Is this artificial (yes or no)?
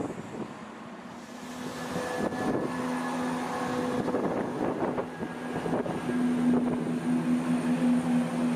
no